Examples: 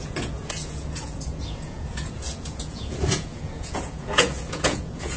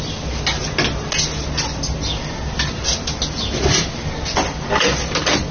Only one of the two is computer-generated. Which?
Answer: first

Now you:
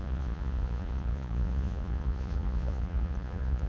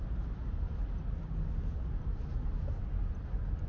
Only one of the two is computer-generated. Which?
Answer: first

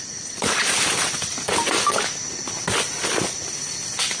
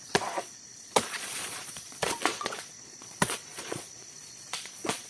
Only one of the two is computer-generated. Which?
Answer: second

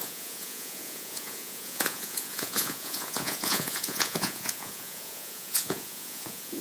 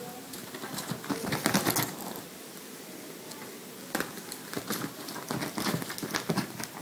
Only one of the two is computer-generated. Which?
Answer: first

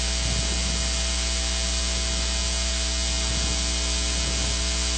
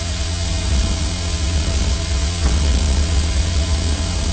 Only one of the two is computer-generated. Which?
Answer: second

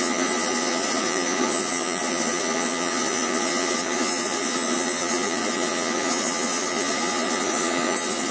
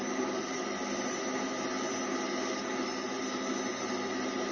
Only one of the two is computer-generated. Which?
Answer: first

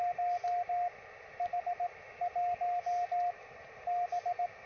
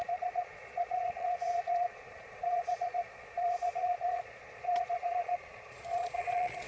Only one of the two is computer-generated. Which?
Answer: second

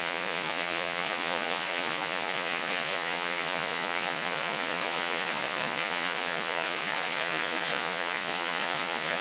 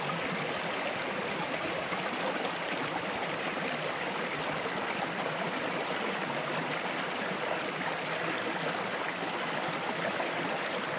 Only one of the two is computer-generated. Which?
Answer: first